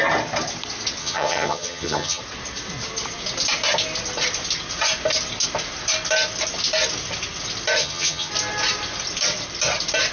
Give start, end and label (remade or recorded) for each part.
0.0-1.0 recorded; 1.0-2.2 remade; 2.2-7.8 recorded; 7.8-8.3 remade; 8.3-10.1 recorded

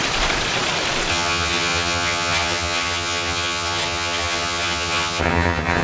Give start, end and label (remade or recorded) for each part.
0.0-1.1 recorded; 1.1-5.8 remade